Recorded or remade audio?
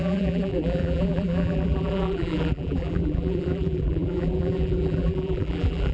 remade